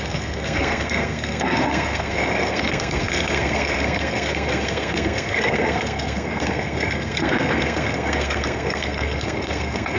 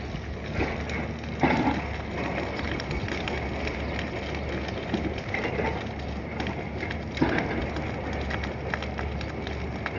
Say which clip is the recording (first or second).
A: second